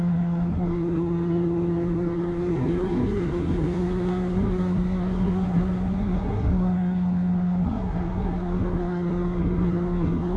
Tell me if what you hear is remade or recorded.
remade